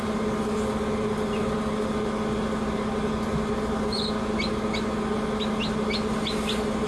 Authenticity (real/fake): real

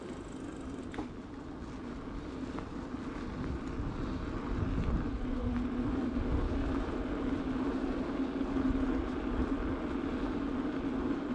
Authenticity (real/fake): real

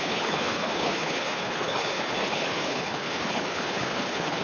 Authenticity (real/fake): fake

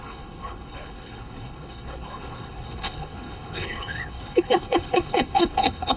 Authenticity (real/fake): fake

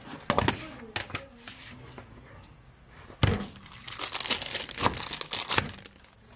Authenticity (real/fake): real